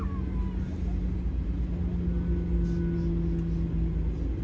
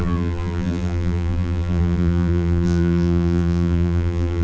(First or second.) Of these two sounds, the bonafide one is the first